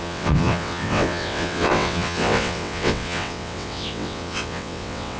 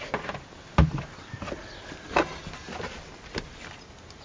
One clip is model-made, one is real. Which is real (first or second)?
second